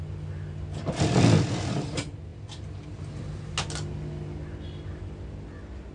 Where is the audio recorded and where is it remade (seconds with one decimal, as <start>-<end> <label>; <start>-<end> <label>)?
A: 0.0-5.9 recorded